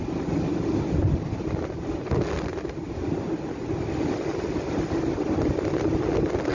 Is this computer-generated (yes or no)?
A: no